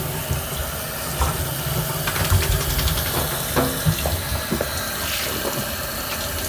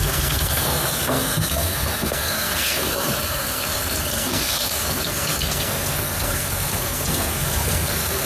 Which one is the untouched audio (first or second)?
first